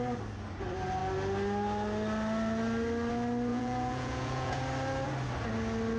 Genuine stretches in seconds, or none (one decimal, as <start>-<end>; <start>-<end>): 0.0-3.5; 4.6-6.0